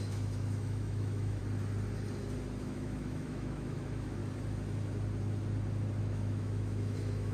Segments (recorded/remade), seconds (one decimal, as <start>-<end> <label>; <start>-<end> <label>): 0.0-1.4 remade; 1.4-2.6 recorded; 2.6-4.2 remade; 4.2-6.0 recorded; 6.0-7.3 remade